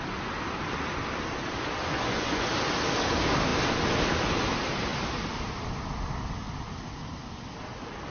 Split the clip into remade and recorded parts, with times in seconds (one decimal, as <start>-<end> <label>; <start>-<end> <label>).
0.0-1.8 recorded; 1.8-2.5 remade; 2.5-8.1 recorded